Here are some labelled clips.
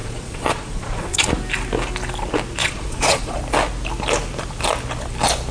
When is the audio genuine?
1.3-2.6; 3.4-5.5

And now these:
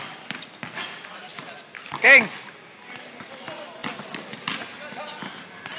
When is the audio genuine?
0.0-5.8